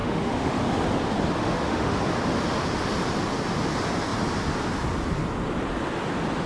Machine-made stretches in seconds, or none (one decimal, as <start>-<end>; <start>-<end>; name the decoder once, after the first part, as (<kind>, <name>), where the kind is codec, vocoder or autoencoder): 0.0-0.6 (autoencoder, DAC-VAE); 1.4-2.0